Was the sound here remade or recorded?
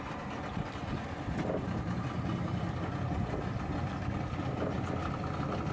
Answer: recorded